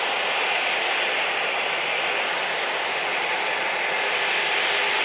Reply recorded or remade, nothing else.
recorded